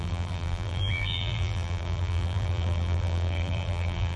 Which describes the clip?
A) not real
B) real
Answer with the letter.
A